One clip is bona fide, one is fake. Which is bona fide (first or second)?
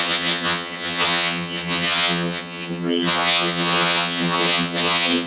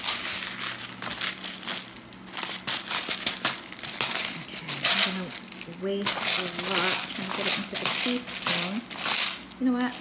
second